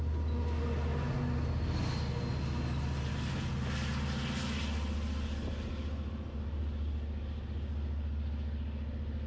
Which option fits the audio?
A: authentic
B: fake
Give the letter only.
A